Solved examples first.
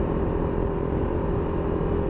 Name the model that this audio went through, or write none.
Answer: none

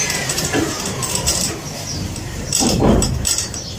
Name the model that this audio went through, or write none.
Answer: vocoder, BigVGAN v2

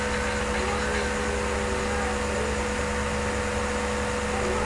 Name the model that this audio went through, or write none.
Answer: none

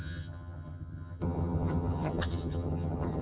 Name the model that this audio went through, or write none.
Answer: vocoder, HiFi-GAN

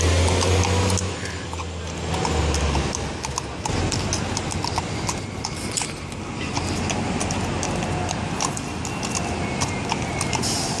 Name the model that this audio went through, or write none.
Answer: none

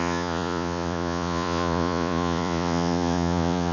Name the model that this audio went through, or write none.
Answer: vocoder, Vocos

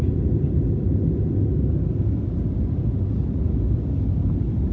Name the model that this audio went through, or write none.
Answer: none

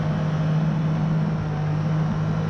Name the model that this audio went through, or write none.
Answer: none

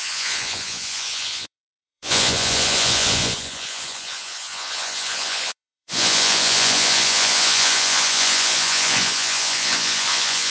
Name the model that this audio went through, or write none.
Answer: vocoder, Vocos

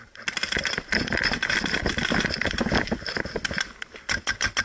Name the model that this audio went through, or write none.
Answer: none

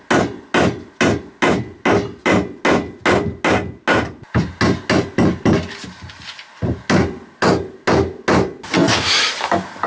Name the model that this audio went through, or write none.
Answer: none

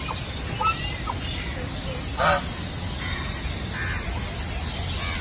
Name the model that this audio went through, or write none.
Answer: none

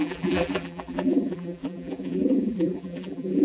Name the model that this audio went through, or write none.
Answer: vocoder, BigVGAN v2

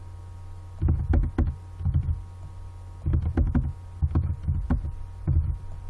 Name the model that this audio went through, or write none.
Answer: none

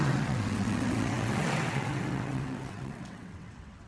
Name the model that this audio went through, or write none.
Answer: vocoder, WaveNeXt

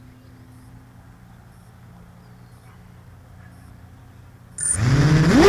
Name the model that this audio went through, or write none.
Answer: none